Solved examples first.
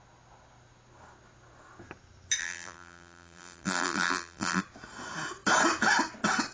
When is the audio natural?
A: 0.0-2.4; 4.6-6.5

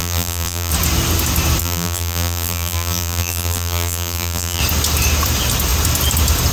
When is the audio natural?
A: 0.7-1.6; 4.6-6.5

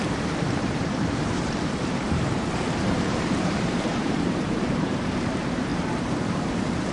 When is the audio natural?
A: none